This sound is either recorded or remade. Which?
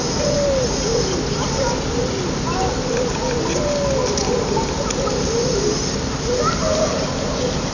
recorded